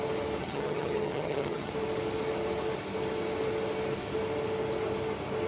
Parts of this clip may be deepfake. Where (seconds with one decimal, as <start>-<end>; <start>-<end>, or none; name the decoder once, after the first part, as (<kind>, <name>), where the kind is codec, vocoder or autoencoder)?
0.4-1.7 (vocoder, HiFi-GAN)